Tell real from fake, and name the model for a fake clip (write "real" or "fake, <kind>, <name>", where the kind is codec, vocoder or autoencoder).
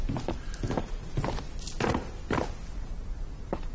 real